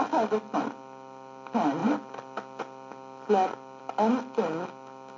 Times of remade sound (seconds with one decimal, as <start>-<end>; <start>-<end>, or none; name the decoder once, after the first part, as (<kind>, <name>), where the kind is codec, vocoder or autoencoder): none